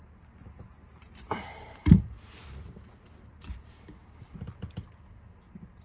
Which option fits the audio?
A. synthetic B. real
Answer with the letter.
B